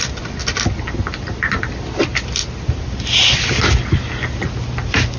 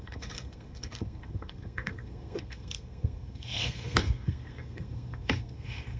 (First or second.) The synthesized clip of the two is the second